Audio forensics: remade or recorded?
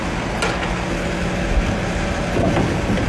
recorded